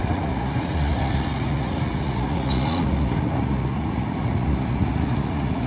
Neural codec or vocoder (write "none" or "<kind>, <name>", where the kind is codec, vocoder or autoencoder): vocoder, Vocos